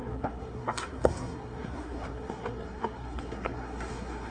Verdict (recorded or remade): remade